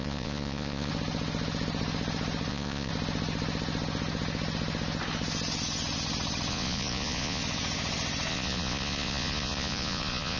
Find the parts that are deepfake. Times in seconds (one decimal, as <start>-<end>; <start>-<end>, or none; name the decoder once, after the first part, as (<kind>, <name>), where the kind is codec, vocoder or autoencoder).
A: 0.0-0.9 (vocoder, Vocos); 2.5-2.9; 6.5-7.4; 8.3-10.4